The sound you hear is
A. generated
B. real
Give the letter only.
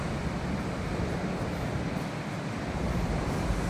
A